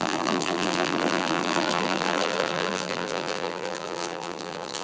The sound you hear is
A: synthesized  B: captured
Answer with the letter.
A